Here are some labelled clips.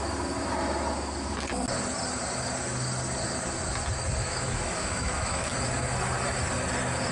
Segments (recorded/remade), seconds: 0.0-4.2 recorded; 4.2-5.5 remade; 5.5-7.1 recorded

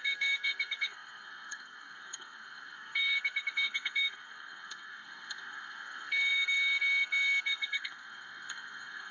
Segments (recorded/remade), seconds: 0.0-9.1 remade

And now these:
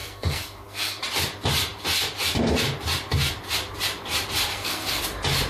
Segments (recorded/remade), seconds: 0.0-1.0 remade; 1.0-4.5 recorded; 4.5-5.0 remade; 5.0-5.5 recorded

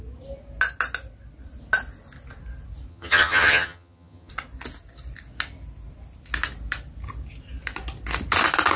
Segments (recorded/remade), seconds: 0.0-2.9 recorded; 2.9-4.3 remade; 4.3-8.8 recorded

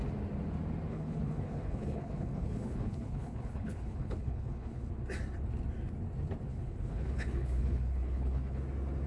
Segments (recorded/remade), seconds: 0.0-0.9 recorded; 0.9-4.9 remade; 4.9-6.5 recorded; 6.5-8.6 remade; 8.6-9.1 recorded

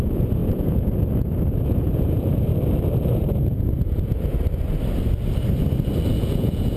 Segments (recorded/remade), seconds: 0.0-2.5 remade; 2.5-3.1 recorded; 3.1-4.3 remade; 4.3-6.1 recorded; 6.1-6.8 remade

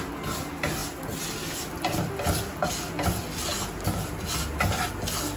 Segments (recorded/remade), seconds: 0.0-5.4 recorded

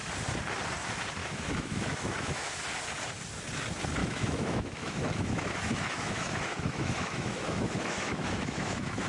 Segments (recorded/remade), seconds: 0.0-1.2 recorded; 1.2-2.5 remade; 2.5-4.0 recorded; 4.0-9.1 remade